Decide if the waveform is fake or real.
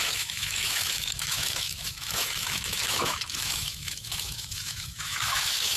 fake